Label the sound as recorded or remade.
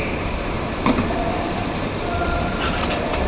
remade